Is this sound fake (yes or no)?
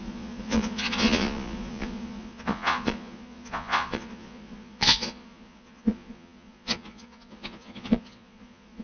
yes